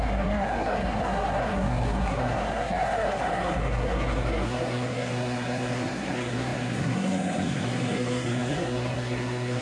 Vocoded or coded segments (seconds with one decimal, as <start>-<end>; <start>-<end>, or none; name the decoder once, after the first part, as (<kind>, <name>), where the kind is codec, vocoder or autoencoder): 0.0-9.6 (codec, SNAC)